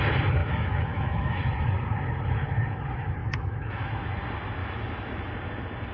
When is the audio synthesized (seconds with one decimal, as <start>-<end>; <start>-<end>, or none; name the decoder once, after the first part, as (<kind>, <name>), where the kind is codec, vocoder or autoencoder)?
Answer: 0.4-1.4 (autoencoder, DAC-VAE); 3.2-3.9; 4.6-5.3